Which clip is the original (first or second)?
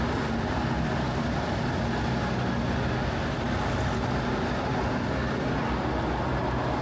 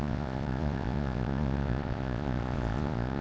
first